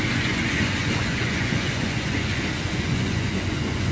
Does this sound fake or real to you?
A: fake